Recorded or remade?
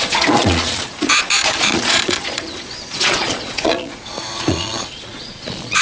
remade